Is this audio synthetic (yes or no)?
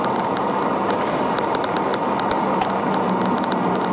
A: no